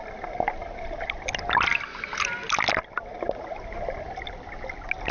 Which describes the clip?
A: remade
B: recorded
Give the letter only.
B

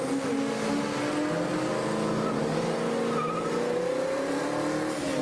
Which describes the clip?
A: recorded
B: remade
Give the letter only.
A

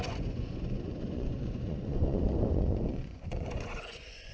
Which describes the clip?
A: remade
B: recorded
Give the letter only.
A